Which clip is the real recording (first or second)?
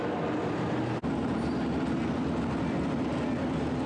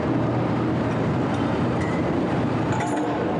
first